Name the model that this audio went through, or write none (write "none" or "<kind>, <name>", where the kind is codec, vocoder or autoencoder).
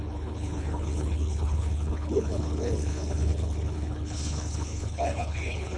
codec, HILCodec